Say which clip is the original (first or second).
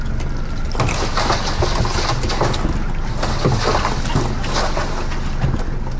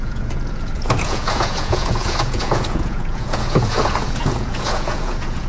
first